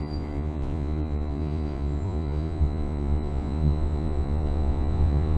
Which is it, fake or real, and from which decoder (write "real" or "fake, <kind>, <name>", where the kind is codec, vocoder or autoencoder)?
fake, vocoder, Vocos